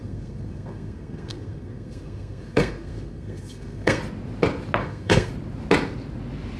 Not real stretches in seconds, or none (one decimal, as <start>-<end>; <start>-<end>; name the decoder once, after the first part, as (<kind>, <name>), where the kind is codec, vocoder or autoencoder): 0.0-4.0 (codec, SNAC); 4.8-5.3